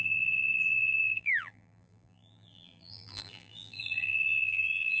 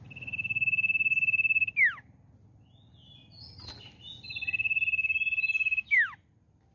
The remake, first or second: first